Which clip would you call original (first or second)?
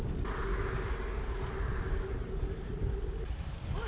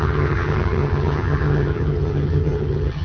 first